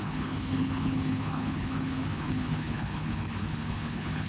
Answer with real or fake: fake